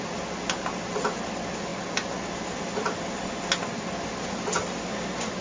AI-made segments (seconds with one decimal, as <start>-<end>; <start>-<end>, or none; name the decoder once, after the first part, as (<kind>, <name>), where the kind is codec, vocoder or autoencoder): none